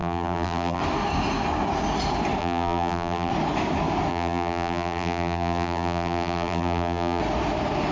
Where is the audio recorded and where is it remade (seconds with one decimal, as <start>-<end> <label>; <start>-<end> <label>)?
0.0-0.8 remade; 0.8-2.4 recorded; 2.4-3.3 remade; 3.3-4.1 recorded; 4.1-7.2 remade; 7.2-7.9 recorded